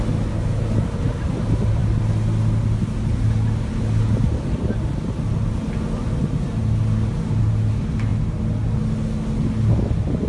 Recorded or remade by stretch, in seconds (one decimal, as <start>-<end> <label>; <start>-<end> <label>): 0.0-10.3 recorded